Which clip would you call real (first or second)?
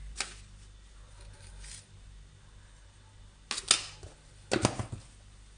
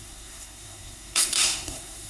first